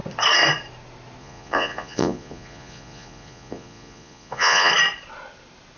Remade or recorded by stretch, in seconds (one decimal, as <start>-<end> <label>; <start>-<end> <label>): 0.0-1.2 recorded; 1.2-4.7 remade; 4.7-5.8 recorded